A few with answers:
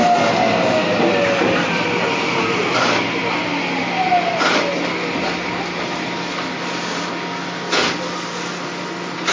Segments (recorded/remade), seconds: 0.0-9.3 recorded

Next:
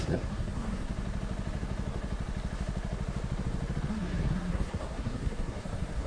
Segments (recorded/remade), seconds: 0.0-0.9 remade; 0.9-3.9 recorded; 3.9-6.1 remade

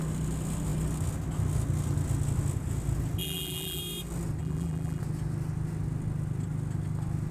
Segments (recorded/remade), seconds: 0.0-3.2 recorded; 3.2-3.8 remade; 3.8-4.4 recorded; 4.4-5.0 remade; 5.0-7.3 recorded

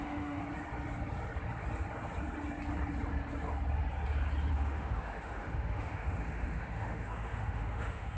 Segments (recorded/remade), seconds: 0.0-0.4 remade; 0.4-4.5 recorded; 4.5-8.2 remade

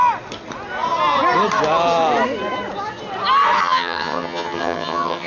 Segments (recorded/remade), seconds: 0.0-3.6 recorded; 3.6-5.3 remade

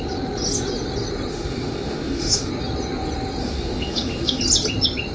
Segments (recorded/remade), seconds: 0.0-1.3 recorded; 1.3-2.5 remade; 2.5-3.4 recorded; 3.4-4.4 remade; 4.4-5.1 recorded